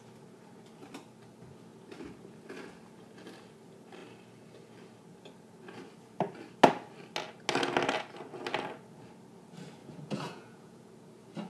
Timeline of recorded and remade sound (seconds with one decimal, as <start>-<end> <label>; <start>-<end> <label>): 0.0-9.8 recorded; 9.8-10.9 remade; 10.9-11.5 recorded